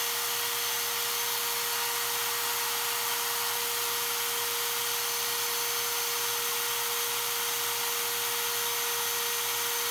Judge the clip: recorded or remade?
recorded